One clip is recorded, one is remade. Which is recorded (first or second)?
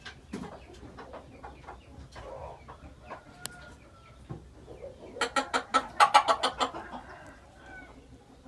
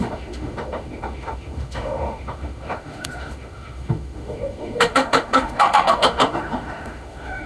first